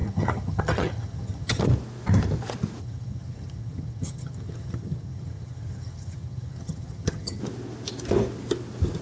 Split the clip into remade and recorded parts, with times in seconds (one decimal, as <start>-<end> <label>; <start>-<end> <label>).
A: 0.0-1.6 remade; 1.6-2.8 recorded; 2.8-7.4 remade; 7.4-9.0 recorded